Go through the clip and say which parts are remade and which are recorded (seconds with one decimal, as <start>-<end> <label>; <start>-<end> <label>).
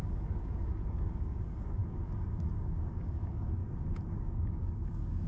0.0-3.6 remade; 3.6-4.1 recorded; 4.1-5.3 remade